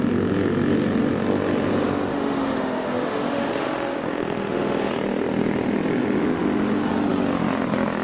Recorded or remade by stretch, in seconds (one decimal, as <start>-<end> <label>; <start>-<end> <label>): 0.0-2.1 recorded; 2.1-4.9 remade; 4.9-8.0 recorded